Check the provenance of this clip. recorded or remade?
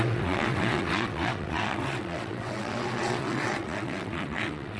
remade